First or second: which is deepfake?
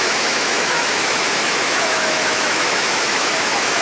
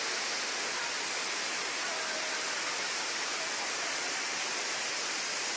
first